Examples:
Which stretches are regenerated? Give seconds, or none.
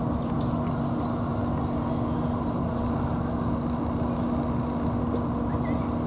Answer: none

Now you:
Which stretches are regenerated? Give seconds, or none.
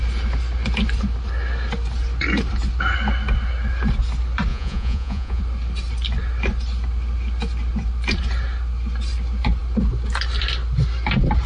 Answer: 4.5-5.4 (vocoder, Vocos)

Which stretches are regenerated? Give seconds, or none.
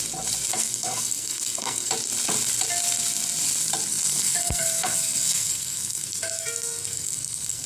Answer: 0.5-1.9 (codec, SNAC); 3.9-7.7